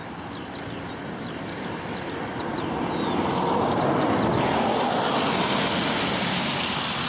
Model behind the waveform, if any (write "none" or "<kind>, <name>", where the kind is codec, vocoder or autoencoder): none